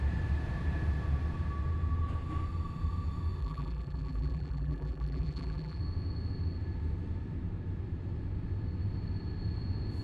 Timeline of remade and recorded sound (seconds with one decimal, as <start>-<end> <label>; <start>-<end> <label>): 0.0-3.4 recorded; 3.4-5.8 remade; 5.8-10.0 recorded